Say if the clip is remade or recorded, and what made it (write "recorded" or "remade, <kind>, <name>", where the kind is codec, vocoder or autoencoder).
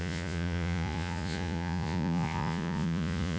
remade, vocoder, Vocos